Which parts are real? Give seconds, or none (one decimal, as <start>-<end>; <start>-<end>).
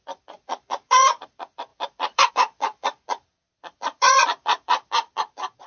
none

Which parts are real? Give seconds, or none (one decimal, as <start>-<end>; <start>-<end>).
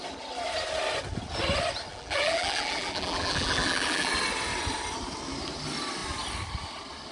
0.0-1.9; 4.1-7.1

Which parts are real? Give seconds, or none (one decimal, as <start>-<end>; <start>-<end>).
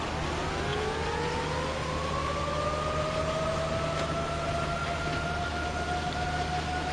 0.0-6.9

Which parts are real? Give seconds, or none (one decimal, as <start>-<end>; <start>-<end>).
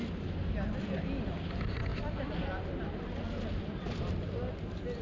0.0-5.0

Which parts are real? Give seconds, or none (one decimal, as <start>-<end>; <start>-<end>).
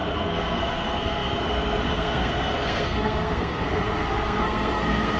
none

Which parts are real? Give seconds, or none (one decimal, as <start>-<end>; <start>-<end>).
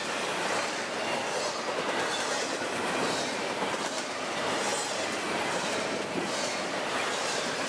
1.2-3.5; 4.7-5.9